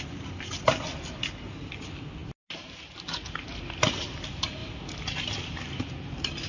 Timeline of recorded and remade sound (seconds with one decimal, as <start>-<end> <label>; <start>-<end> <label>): 0.0-6.5 recorded